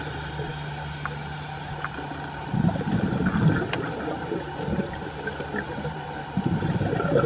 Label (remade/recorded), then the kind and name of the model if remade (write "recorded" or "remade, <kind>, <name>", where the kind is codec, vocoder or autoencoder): recorded